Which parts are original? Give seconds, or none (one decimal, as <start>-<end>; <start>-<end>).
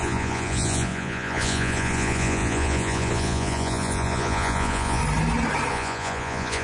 5.0-5.7